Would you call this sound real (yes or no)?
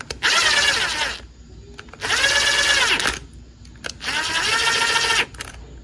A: yes